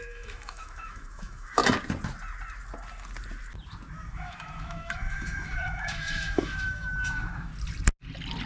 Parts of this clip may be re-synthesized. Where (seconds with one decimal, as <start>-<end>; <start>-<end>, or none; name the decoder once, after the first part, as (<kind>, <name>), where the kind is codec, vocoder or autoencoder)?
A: 0.0-1.6 (autoencoder, DAC-VAE); 4.1-7.5